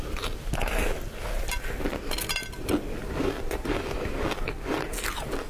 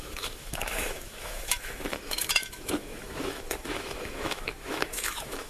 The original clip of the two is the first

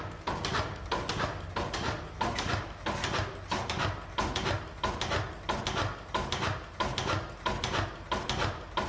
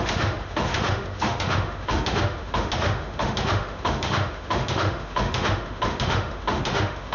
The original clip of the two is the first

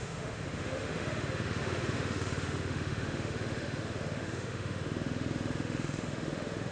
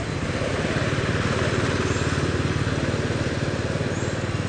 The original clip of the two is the second